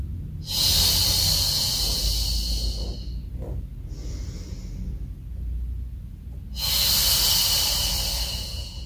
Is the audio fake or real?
real